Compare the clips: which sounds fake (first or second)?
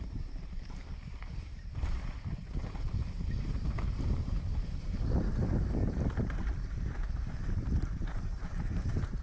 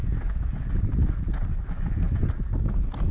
first